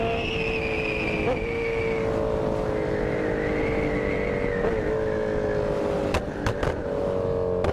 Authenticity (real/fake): real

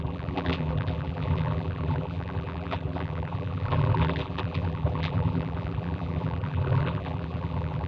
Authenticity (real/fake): fake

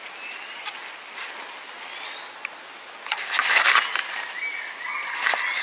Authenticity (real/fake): real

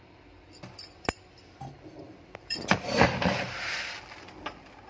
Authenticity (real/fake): fake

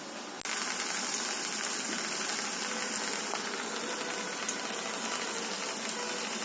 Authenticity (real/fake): real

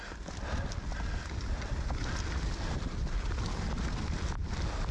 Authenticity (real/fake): real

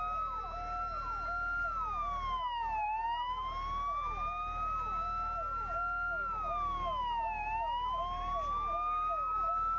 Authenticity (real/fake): real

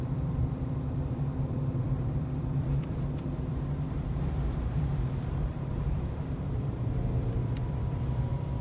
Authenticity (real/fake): fake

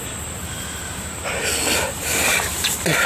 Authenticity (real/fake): fake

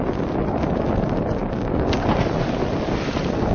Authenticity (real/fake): real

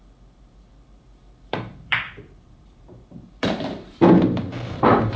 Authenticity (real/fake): fake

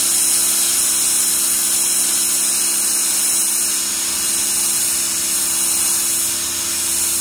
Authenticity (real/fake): real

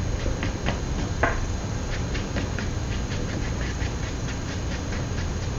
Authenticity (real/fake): real